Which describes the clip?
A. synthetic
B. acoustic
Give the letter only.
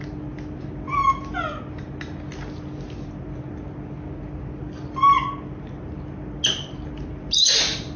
B